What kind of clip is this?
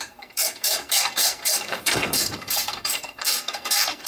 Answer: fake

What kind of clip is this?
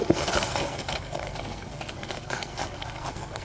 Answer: fake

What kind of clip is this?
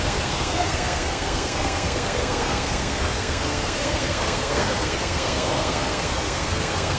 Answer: fake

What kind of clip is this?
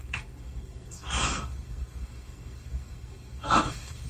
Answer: fake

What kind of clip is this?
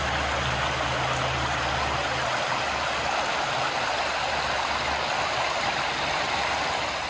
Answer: real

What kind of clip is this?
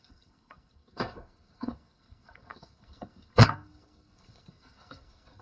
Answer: fake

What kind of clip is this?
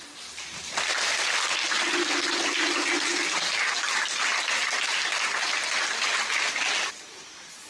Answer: real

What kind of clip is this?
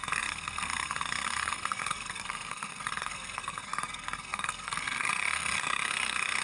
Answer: fake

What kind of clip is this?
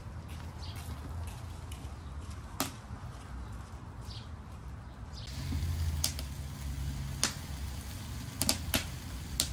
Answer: real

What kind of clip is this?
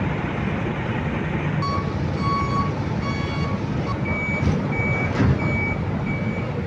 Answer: real